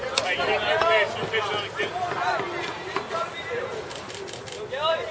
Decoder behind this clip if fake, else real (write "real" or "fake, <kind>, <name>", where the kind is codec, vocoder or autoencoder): real